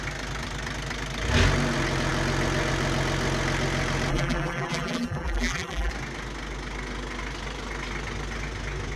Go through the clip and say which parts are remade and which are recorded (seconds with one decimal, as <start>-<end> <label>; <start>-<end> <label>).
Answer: 0.0-4.1 recorded; 4.1-5.9 remade; 5.9-9.0 recorded